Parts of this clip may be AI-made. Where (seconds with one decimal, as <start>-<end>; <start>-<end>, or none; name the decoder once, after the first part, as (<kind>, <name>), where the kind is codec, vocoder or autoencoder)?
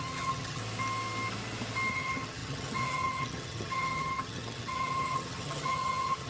0.0-0.6 (vocoder, HiFi-GAN); 1.9-6.3